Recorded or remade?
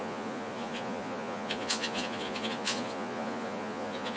remade